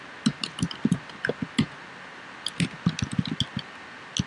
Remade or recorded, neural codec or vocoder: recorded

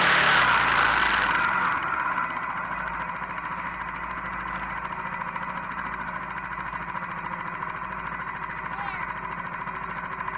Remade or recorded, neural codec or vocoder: recorded